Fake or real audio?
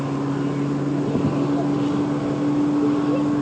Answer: real